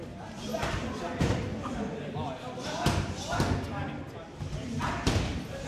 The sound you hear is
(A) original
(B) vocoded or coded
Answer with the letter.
A